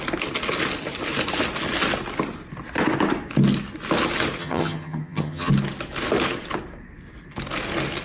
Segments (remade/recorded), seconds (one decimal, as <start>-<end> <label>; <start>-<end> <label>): 0.0-4.4 recorded; 4.4-5.5 remade; 5.5-8.0 recorded